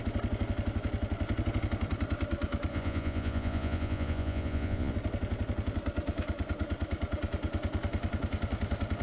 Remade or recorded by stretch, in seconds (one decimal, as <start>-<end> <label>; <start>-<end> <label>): 0.0-2.7 recorded; 2.7-4.9 remade; 4.9-9.0 recorded